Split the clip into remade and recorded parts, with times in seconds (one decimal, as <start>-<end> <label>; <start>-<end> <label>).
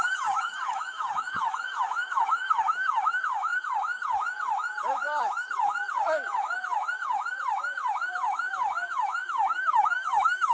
0.0-10.5 remade